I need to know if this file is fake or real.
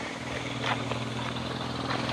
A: real